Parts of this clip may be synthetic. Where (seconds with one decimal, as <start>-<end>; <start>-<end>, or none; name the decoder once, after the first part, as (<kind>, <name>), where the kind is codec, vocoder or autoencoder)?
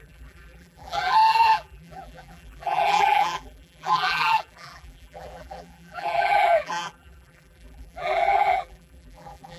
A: 0.0-9.6 (vocoder, BigVGAN v2)